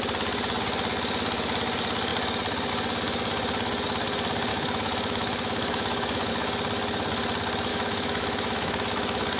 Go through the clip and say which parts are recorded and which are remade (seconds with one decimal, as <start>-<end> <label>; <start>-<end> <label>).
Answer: 0.0-4.5 recorded; 4.5-6.3 remade; 6.3-7.7 recorded; 7.7-9.4 remade

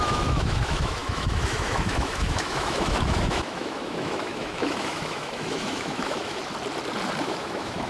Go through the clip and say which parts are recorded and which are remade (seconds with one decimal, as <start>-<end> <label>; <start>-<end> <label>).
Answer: 0.0-6.4 remade; 6.4-7.2 recorded; 7.2-7.9 remade

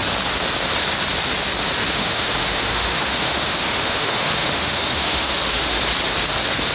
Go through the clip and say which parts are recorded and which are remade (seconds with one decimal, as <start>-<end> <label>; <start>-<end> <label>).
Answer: 0.0-1.8 recorded; 1.8-5.8 remade; 5.8-6.7 recorded

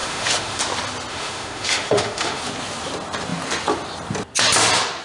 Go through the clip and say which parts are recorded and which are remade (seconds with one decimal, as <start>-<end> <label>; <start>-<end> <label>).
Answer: 0.0-0.6 remade; 0.6-1.1 recorded; 1.1-2.4 remade; 2.4-5.0 recorded